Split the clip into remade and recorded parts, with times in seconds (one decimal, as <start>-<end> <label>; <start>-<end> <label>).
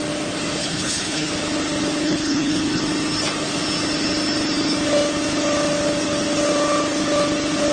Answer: 0.0-0.6 recorded; 0.6-1.3 remade; 1.3-2.0 recorded; 2.0-2.8 remade; 2.8-7.7 recorded